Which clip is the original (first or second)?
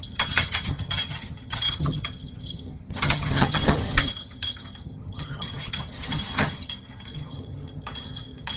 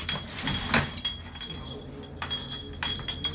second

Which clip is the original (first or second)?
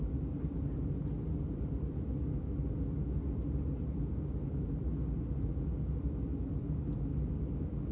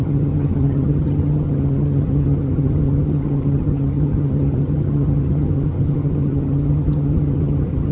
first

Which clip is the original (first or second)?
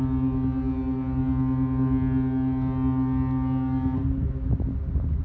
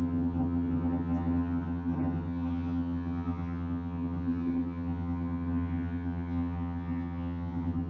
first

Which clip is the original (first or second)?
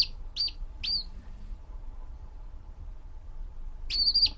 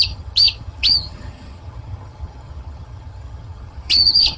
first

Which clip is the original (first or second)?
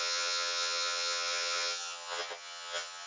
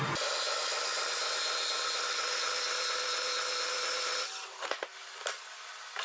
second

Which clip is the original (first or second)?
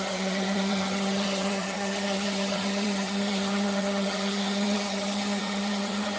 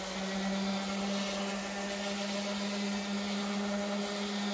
second